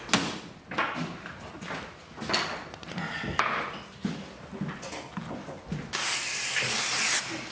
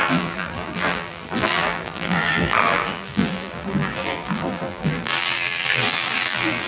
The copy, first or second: second